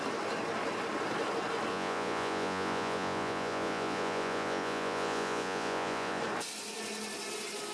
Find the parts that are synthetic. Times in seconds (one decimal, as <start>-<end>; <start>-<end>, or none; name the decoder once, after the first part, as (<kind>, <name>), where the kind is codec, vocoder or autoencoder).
1.7-6.2 (vocoder, Vocos)